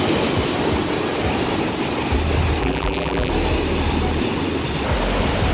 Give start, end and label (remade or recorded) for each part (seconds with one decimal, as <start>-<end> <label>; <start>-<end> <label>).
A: 0.0-2.6 recorded; 2.6-3.3 remade; 3.3-5.5 recorded